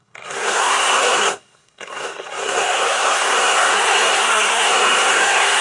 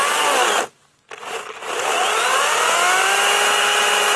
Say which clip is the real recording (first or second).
second